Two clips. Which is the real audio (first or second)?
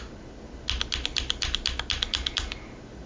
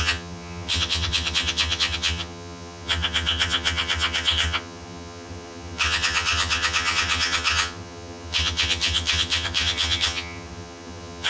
first